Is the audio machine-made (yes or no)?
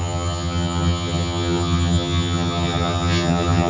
yes